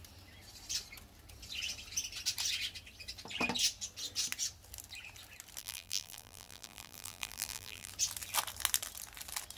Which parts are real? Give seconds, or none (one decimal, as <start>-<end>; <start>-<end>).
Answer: 0.0-5.6; 7.9-9.6